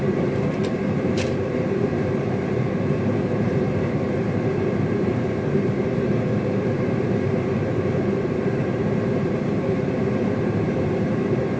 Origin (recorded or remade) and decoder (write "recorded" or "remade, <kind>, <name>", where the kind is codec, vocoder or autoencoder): remade, vocoder, BigVGAN v2